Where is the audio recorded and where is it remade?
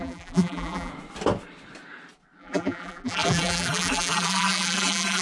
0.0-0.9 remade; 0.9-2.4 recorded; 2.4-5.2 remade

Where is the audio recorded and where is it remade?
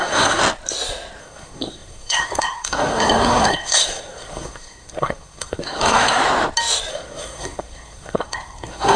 0.0-0.4 remade; 0.4-1.2 recorded; 1.2-6.2 remade; 6.2-6.9 recorded; 6.9-9.0 remade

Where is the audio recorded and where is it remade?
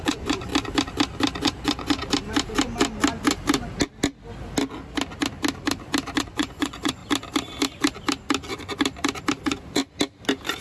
0.0-0.5 remade; 0.5-1.4 recorded; 1.4-2.0 remade; 2.0-6.2 recorded; 6.2-7.0 remade; 7.0-9.4 recorded; 9.4-9.8 remade; 9.8-10.6 recorded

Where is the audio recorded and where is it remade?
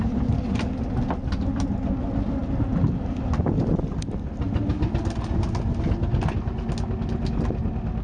0.0-8.0 recorded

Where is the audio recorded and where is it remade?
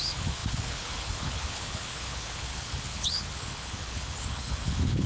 0.0-5.1 remade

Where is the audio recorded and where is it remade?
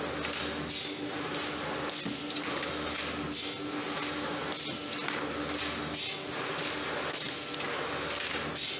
0.0-8.8 recorded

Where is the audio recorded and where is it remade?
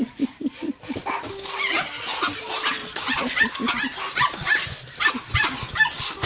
0.0-2.8 recorded; 2.8-3.5 remade; 3.5-6.2 recorded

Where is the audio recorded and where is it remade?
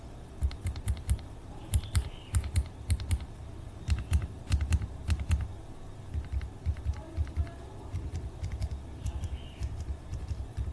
0.0-10.7 recorded